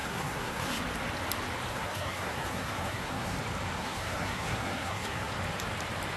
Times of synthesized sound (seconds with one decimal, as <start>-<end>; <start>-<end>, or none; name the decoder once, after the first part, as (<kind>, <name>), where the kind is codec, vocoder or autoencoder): 0.0-0.8 (codec, SNAC); 1.7-3.4; 3.8-5.3